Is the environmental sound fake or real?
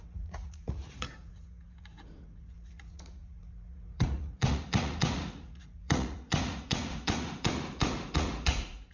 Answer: fake